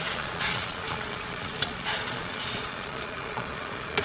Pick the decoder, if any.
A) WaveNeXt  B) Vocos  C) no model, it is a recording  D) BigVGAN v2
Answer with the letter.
B